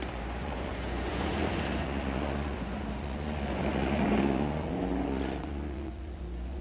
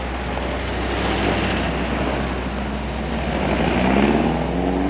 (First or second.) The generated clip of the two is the first